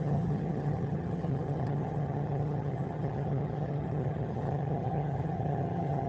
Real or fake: fake